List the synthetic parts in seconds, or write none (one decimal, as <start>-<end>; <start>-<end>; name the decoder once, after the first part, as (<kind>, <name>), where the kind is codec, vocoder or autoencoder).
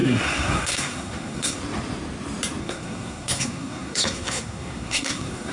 0.0-1.6 (codec, SNAC); 2.6-5.5